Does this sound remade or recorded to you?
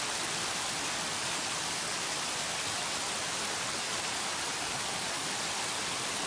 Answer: recorded